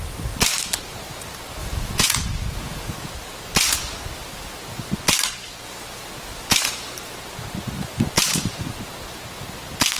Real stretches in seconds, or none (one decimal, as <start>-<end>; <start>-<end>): 0.0-1.6; 3.1-10.0